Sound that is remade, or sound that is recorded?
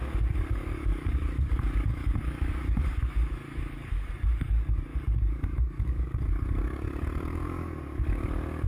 remade